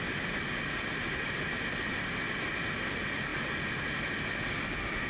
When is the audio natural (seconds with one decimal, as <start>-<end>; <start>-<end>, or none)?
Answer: 0.0-5.1